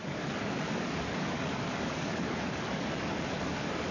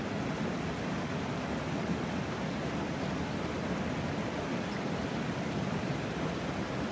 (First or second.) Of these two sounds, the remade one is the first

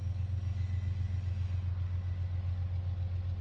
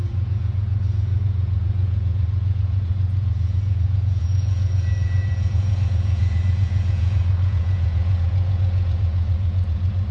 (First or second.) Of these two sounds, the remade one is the second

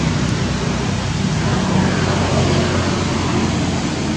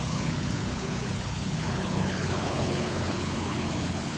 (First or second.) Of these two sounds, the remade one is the second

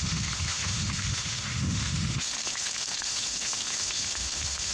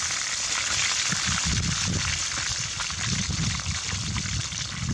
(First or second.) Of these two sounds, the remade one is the first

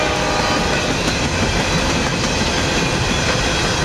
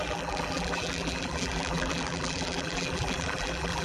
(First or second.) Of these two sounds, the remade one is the second